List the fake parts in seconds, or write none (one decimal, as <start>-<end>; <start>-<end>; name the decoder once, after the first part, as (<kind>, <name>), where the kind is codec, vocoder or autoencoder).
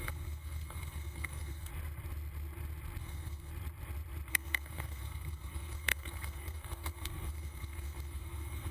0.0-1.7 (codec, SNAC); 3.0-3.5; 4.3-8.7